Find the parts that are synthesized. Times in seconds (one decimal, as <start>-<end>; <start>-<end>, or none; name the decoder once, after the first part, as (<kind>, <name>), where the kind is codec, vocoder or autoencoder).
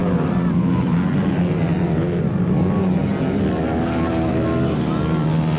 none